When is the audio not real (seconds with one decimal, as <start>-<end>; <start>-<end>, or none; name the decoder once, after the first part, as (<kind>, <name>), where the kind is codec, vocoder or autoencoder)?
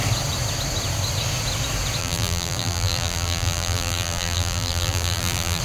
2.0-5.6 (vocoder, BigVGAN v2)